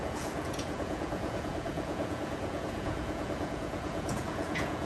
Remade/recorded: remade